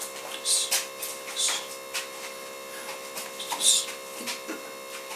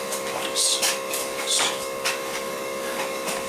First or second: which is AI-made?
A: second